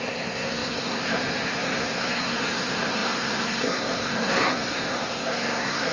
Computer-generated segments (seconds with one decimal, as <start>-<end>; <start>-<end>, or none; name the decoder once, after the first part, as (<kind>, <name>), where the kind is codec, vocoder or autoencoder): 0.0-5.9 (codec, SNAC)